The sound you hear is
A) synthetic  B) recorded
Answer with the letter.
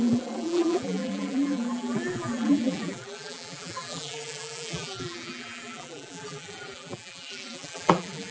A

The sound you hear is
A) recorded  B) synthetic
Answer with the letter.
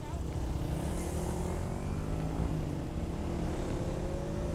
A